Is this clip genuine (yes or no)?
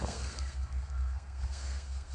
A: no